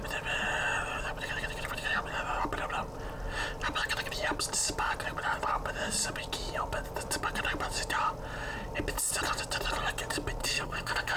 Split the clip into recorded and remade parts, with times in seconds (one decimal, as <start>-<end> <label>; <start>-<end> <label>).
0.0-10.4 recorded; 10.4-11.2 remade

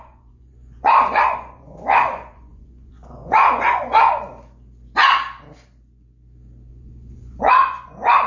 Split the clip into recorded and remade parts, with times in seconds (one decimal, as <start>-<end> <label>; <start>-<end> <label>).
0.0-4.3 remade; 4.3-6.7 recorded; 6.7-8.3 remade

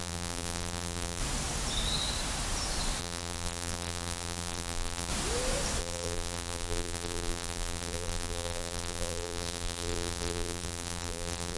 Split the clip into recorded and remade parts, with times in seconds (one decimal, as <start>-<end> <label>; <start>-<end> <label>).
0.0-1.2 remade; 1.2-3.0 recorded; 3.0-5.1 remade; 5.1-5.8 recorded; 5.8-11.6 remade

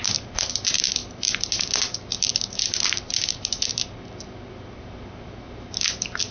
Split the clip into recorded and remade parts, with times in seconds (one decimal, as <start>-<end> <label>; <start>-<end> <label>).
0.0-1.0 recorded; 1.0-2.5 remade; 2.5-6.3 recorded

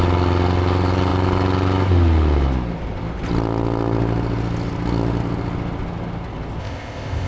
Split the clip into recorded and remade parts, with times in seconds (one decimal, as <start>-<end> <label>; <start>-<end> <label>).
0.0-6.6 recorded; 6.6-7.3 remade